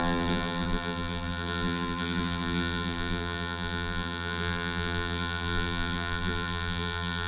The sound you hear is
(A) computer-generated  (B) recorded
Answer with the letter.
A